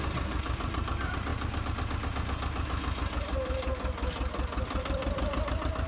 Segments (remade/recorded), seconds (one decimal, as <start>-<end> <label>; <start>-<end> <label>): 0.0-1.3 remade; 1.3-4.8 recorded; 4.8-5.9 remade